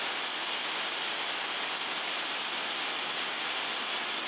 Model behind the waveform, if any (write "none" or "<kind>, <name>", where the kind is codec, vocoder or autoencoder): none